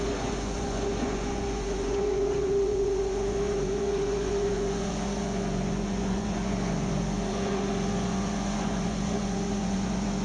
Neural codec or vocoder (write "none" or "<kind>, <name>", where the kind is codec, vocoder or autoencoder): vocoder, Vocos